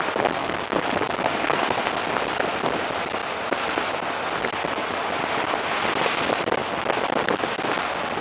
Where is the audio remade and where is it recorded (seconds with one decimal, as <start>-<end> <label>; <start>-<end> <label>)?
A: 0.0-0.4 recorded; 0.4-1.8 remade; 1.8-8.2 recorded